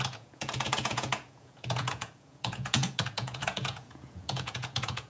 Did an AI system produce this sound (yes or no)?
yes